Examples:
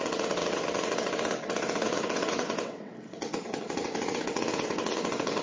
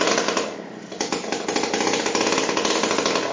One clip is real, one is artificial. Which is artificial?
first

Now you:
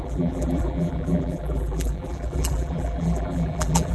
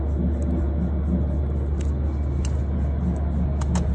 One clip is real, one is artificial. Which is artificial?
first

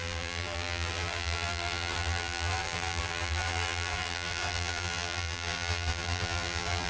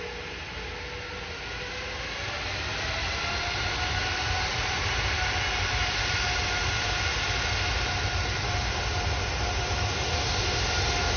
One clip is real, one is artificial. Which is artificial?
first